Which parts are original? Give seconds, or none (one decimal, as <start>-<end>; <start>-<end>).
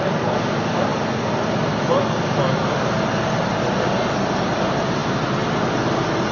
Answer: 0.0-6.3